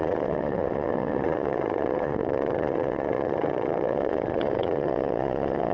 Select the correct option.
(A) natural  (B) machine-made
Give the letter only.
B